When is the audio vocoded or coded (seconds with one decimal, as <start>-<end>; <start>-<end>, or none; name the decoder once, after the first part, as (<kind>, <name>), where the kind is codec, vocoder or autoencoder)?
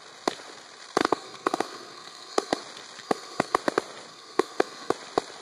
1.0-2.6 (codec, SNAC); 3.0-3.6; 4.1-4.9